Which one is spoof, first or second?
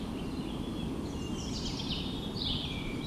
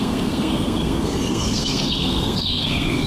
second